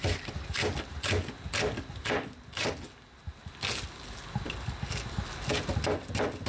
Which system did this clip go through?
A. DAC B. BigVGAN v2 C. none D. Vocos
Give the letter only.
C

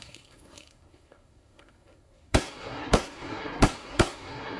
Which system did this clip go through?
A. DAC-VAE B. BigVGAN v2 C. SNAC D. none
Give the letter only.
C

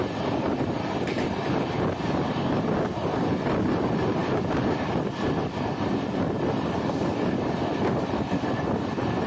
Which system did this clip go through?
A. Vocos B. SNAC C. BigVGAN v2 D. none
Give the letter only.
C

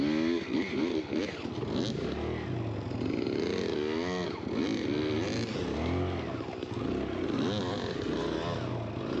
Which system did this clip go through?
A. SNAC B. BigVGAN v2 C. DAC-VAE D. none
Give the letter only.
D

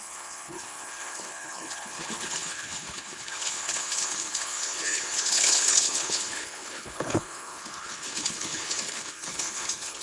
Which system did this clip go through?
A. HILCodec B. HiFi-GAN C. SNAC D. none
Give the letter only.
A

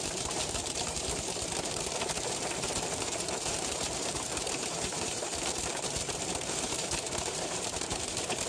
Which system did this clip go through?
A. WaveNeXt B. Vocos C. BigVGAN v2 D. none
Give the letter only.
C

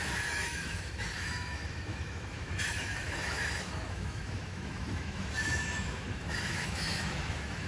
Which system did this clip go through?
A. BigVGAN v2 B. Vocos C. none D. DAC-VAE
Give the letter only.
D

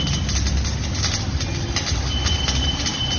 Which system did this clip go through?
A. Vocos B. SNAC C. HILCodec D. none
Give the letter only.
D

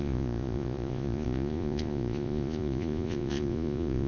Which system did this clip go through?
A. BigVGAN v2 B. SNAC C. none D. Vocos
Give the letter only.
D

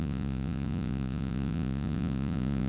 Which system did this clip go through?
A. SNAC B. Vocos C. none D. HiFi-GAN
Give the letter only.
B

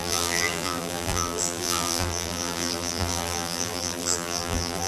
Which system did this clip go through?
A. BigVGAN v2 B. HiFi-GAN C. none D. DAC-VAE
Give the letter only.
A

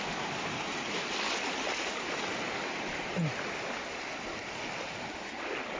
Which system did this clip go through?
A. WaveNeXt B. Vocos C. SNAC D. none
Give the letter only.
D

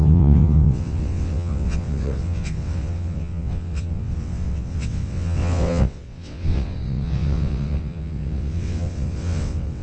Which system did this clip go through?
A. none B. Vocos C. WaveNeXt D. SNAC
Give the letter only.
C